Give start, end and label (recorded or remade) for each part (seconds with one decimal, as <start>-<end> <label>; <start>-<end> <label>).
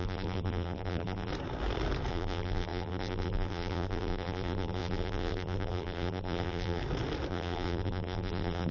0.0-1.3 remade; 1.3-2.1 recorded; 2.1-6.8 remade; 6.8-7.3 recorded; 7.3-8.7 remade